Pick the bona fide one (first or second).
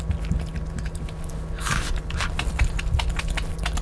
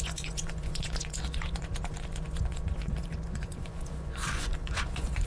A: first